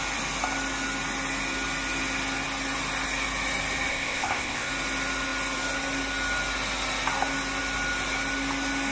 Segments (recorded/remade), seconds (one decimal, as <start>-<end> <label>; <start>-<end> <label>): 0.0-3.9 recorded; 3.9-4.7 remade; 4.7-8.9 recorded